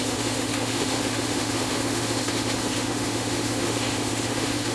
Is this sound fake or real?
fake